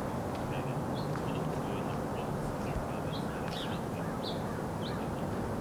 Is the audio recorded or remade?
recorded